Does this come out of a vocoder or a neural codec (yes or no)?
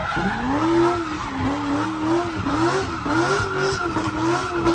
no